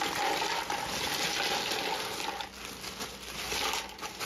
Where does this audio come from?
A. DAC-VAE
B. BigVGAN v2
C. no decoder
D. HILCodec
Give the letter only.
C